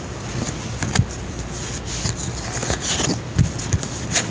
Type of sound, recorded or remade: recorded